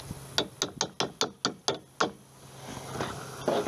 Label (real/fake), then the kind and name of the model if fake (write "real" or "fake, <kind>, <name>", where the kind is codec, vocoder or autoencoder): real